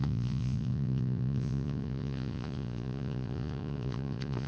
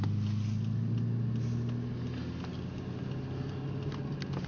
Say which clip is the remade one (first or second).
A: first